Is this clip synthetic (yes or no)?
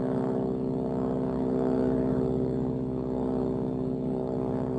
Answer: yes